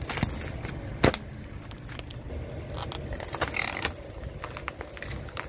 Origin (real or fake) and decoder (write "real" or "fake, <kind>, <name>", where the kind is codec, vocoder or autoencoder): real